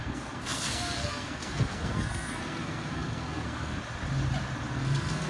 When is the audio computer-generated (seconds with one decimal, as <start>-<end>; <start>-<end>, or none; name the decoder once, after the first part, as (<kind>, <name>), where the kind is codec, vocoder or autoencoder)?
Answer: 0.0-3.8 (codec, SNAC); 4.7-5.3